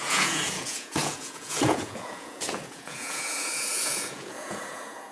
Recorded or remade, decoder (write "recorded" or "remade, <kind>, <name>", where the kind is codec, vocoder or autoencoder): remade, vocoder, Vocos